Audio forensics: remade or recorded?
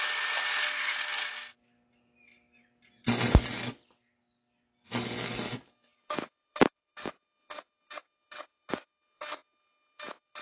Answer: recorded